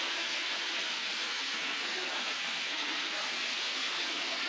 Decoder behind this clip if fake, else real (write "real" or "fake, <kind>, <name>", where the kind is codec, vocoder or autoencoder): fake, codec, SNAC